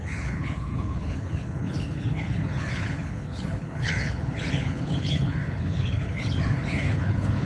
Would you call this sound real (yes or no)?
no